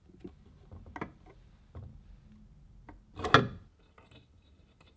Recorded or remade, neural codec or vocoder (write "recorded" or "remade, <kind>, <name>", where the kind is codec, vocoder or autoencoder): recorded